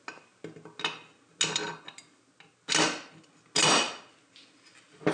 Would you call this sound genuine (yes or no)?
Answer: yes